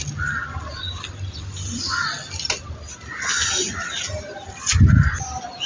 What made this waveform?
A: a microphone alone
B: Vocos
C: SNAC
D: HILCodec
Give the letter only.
A